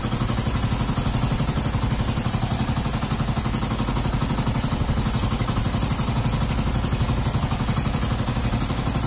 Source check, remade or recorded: recorded